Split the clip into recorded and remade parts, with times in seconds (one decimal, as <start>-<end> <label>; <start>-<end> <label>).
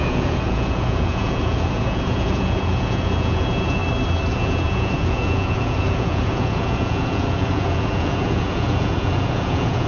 0.0-3.8 remade; 3.8-4.3 recorded; 4.3-9.9 remade